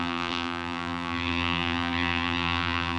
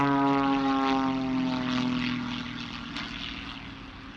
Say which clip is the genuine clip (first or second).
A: second